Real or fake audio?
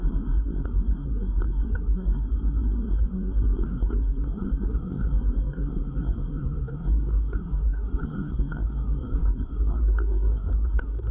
fake